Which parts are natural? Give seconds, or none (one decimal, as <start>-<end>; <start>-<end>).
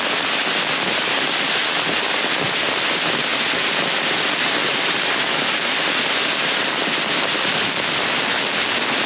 0.0-9.1